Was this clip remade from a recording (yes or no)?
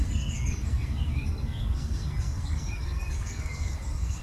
yes